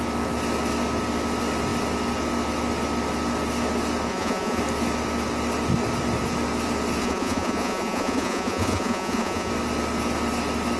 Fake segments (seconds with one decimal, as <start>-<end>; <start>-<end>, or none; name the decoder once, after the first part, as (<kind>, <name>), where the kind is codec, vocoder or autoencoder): 4.1-4.6 (vocoder, Vocos); 7.0-9.5

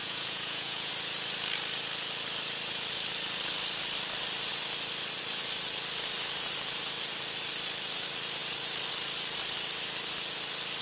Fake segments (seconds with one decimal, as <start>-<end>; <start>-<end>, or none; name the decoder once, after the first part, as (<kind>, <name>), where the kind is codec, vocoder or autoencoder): 0.0-0.9 (vocoder, Vocos)